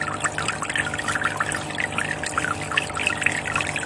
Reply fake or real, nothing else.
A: real